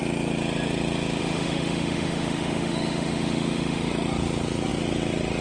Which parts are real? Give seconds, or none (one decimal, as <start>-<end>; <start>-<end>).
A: 0.0-1.2; 3.9-5.4